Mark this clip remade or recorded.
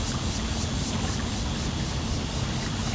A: recorded